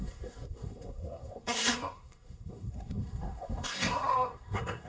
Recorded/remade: remade